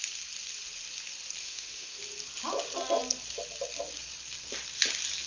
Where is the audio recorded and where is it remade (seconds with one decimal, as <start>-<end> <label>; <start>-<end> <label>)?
0.0-1.4 recorded; 1.4-2.0 remade; 2.0-5.3 recorded